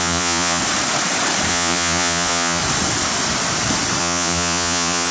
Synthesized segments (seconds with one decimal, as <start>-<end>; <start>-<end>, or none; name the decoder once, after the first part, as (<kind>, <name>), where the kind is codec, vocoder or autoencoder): 0.0-0.6 (vocoder, Vocos); 1.5-2.6; 4.0-5.1